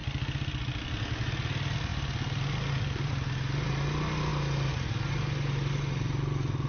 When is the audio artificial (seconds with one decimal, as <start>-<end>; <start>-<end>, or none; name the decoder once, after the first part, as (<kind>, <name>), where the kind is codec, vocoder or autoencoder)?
none